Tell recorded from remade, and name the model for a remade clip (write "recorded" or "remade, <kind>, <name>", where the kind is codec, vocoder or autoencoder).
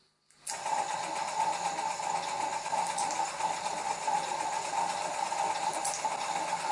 recorded